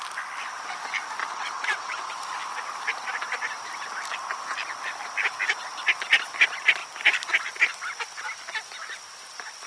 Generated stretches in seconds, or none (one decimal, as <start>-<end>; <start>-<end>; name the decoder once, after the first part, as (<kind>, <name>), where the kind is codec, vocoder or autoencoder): 1.2-2.1 (vocoder, WaveNeXt)